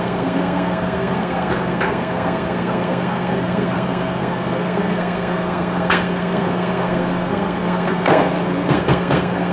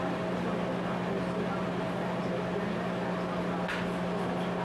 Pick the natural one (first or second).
second